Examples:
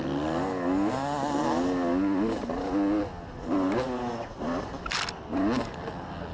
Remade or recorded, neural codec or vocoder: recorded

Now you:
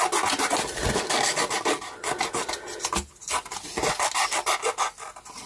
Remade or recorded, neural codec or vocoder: recorded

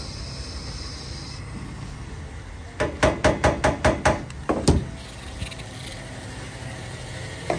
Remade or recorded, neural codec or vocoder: recorded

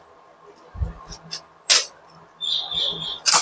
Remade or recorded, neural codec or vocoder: recorded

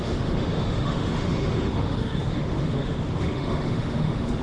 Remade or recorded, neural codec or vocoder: remade, autoencoder, DAC-VAE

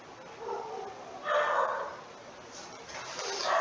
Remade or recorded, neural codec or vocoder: recorded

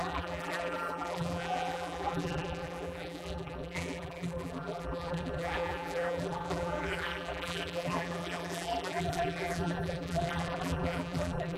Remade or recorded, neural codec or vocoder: remade, vocoder, BigVGAN v2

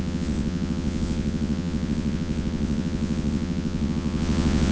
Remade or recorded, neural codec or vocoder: remade, vocoder, WaveNeXt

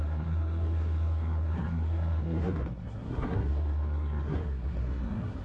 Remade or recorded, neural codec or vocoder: remade, codec, SNAC